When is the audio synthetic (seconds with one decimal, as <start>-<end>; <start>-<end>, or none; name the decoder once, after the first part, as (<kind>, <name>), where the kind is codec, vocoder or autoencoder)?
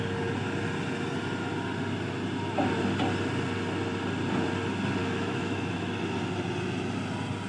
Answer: 5.0-5.9 (autoencoder, DAC-VAE)